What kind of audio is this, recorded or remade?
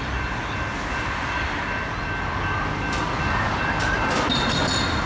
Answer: recorded